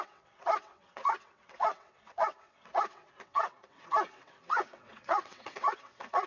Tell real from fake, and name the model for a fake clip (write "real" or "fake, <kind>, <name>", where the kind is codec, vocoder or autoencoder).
fake, vocoder, WaveNeXt